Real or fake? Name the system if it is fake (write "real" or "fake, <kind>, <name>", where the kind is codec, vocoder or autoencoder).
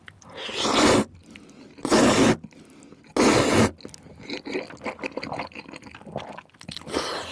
real